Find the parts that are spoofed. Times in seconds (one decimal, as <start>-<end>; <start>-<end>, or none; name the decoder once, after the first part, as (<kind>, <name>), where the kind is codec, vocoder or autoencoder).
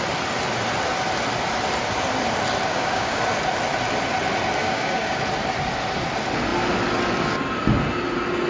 2.7-3.2 (codec, DAC); 4.6-5.2